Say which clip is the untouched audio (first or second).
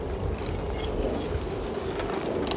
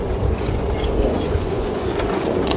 first